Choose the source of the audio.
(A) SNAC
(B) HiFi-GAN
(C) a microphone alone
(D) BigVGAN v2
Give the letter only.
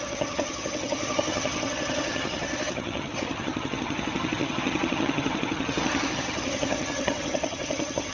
B